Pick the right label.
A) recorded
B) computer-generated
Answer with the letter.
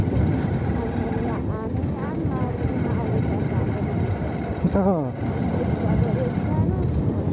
A